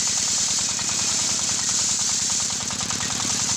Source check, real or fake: fake